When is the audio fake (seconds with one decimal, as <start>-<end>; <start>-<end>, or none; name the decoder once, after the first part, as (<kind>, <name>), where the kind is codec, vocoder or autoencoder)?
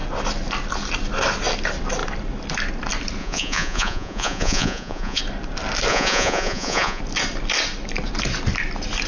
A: 3.2-5.2 (vocoder, Vocos); 5.9-7.0